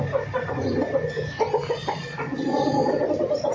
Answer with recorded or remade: recorded